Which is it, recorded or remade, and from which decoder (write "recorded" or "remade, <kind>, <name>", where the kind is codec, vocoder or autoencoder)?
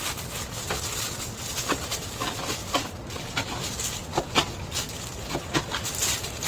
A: recorded